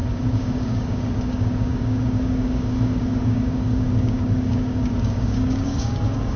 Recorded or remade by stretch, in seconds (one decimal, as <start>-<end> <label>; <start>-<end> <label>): 0.0-6.4 remade